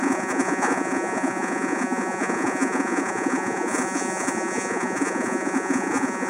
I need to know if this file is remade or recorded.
remade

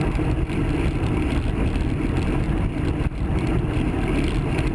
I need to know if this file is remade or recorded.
recorded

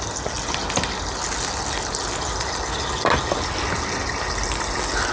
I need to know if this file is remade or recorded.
recorded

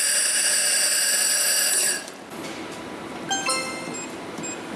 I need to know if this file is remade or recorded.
recorded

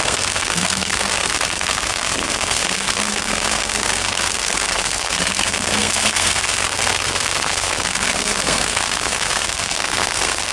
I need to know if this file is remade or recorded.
remade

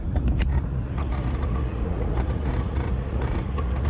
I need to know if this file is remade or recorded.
remade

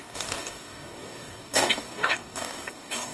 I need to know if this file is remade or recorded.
remade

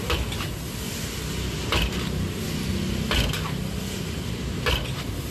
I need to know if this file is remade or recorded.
recorded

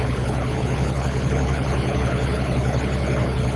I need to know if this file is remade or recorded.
remade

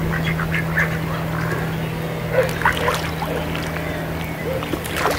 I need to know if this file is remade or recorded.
recorded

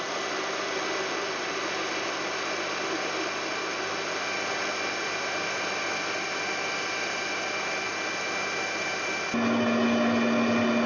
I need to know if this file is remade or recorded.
recorded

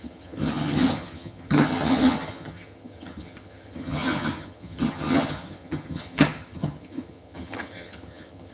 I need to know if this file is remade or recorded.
remade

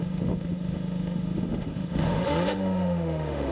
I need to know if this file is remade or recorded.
remade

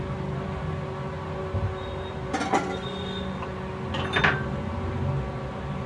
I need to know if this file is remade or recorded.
recorded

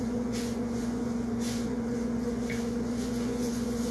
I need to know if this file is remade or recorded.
remade